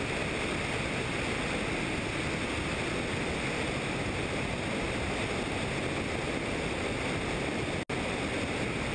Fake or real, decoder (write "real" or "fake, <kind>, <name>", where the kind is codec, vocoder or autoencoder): real